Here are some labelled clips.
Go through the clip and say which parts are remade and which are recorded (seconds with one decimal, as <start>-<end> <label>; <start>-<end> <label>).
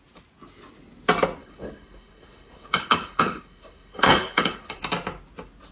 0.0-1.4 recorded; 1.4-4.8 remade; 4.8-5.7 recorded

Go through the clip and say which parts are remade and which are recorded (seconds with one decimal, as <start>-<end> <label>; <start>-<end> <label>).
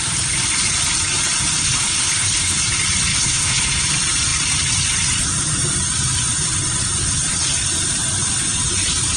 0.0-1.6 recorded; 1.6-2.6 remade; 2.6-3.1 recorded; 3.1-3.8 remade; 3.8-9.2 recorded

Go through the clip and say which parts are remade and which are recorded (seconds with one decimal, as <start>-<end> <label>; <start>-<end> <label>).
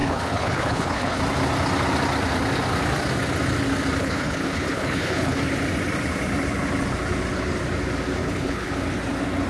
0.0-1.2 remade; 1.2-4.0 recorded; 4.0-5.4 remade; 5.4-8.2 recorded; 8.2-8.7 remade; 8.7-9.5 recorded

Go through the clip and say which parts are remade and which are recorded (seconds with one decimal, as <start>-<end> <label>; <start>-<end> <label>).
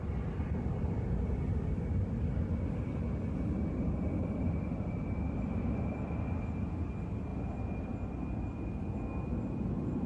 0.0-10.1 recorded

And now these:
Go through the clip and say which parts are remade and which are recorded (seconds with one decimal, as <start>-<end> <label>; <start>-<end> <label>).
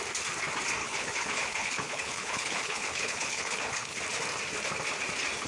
0.0-0.8 recorded; 0.8-4.0 remade; 4.0-5.5 recorded